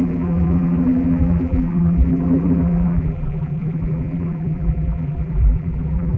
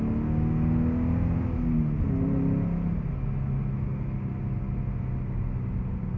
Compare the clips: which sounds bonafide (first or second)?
second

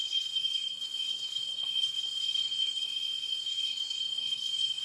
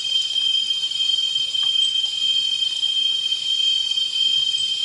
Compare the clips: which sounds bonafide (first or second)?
second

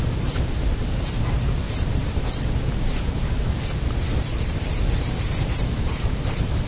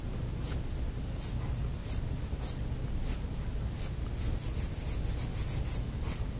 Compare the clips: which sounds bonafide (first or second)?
second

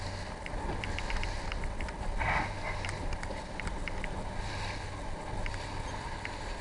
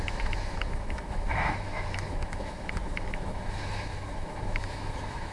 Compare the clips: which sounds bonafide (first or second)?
first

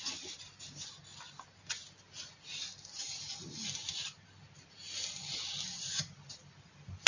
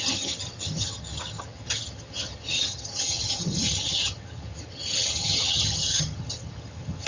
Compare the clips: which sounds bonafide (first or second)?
first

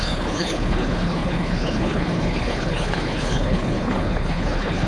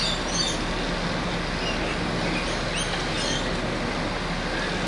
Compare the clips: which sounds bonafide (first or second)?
second